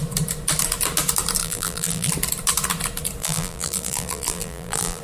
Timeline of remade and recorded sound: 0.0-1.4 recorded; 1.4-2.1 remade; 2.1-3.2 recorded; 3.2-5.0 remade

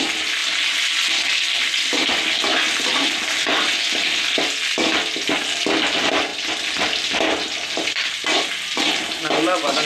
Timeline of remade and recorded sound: 0.0-0.4 recorded; 0.4-1.5 remade; 1.5-6.3 recorded; 6.3-9.0 remade; 9.0-9.8 recorded

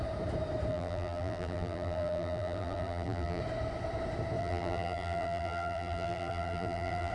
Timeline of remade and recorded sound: 0.0-0.7 recorded; 0.7-3.4 remade; 3.4-4.4 recorded; 4.4-7.1 remade

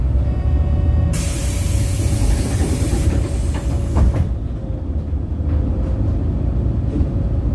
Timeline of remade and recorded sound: 0.0-3.1 remade; 3.1-7.5 recorded